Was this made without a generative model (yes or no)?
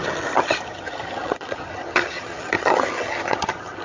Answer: no